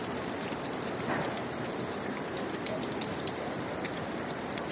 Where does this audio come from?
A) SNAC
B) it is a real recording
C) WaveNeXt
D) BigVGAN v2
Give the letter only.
D